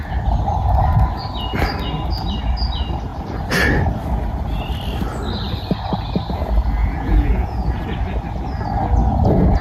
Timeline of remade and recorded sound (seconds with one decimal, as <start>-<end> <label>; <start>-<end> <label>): 0.0-6.8 recorded; 6.8-7.8 remade; 7.8-9.6 recorded